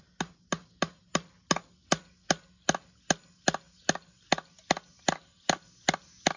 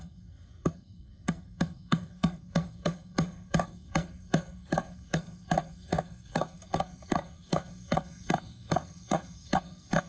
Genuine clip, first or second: first